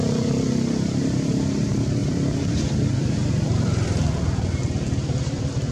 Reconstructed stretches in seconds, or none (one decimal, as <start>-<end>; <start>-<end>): 1.0-5.7